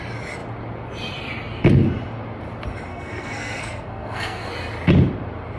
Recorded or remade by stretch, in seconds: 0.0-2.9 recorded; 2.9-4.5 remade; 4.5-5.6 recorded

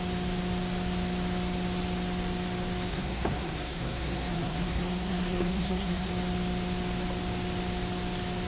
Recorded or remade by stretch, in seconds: 0.0-2.9 recorded; 2.9-6.1 remade; 6.1-8.5 recorded

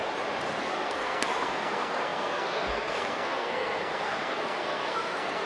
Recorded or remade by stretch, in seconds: 0.0-0.6 recorded; 0.6-5.5 remade

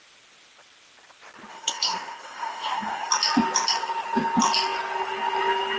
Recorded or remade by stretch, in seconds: 0.0-1.5 recorded; 1.5-3.1 remade; 3.1-5.8 recorded

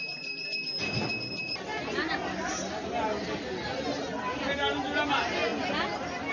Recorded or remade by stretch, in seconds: 0.0-6.3 recorded

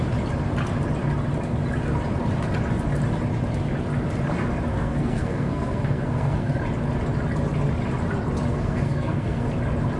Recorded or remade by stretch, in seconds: 0.0-4.7 recorded; 4.7-6.5 remade; 6.5-8.5 recorded; 8.5-9.5 remade; 9.5-10.0 recorded